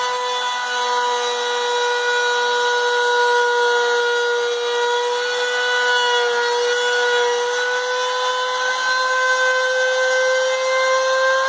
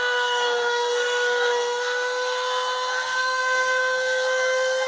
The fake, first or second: second